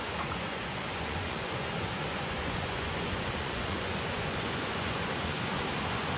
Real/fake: fake